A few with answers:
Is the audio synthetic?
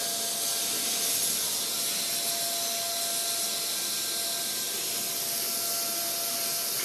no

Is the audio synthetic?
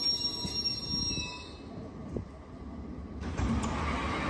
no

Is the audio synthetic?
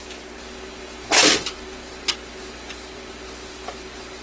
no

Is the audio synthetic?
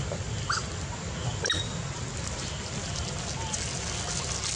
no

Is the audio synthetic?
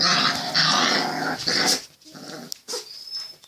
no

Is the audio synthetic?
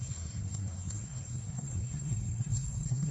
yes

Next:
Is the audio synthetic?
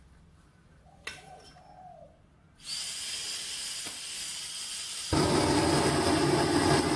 no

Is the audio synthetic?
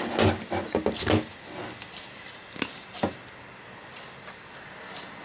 no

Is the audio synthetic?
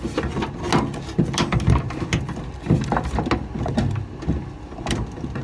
no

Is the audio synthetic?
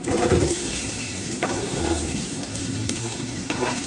yes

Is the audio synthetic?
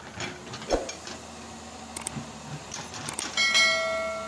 no